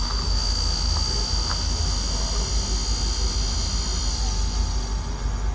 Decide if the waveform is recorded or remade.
recorded